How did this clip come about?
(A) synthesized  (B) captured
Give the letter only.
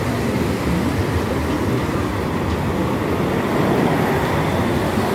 A